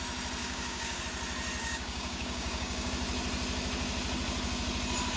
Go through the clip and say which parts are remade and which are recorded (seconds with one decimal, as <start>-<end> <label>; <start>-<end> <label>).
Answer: 0.0-0.4 recorded; 0.4-1.0 remade; 1.0-1.6 recorded; 1.6-2.9 remade; 2.9-5.2 recorded